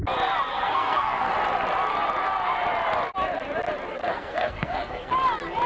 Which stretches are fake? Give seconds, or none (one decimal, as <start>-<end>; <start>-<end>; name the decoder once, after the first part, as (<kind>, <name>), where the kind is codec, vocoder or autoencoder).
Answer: 0.5-1.3 (codec, SNAC); 3.9-5.1